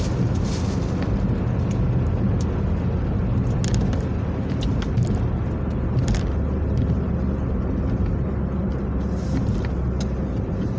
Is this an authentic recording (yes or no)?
yes